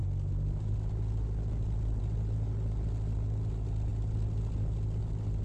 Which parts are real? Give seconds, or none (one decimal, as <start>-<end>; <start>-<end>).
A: 0.0-5.4